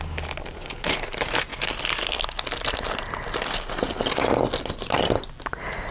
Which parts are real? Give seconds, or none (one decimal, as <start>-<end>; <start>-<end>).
0.0-5.9